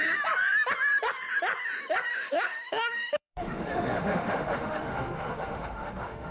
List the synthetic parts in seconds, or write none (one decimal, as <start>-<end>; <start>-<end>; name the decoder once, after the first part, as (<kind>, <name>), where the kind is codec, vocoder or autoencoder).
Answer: 2.1-6.3 (autoencoder, DAC-VAE)